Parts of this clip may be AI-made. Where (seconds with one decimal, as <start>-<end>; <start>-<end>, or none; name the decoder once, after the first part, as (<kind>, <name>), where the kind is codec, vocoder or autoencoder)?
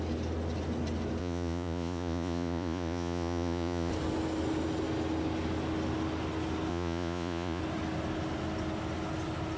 1.2-3.9 (vocoder, Vocos); 6.7-7.6